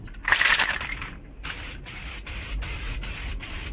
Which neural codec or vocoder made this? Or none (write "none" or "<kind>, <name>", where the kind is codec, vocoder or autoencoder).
vocoder, BigVGAN v2